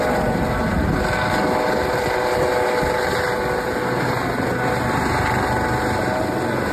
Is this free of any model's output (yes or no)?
yes